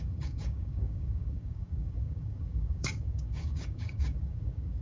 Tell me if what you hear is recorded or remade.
remade